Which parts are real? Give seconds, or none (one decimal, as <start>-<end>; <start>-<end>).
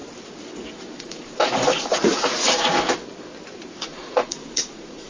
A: 0.0-1.0; 2.7-3.8